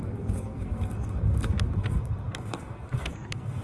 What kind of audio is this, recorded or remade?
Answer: remade